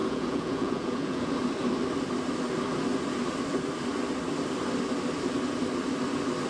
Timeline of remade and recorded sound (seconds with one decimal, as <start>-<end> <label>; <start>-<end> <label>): 0.0-1.3 remade; 1.3-6.5 recorded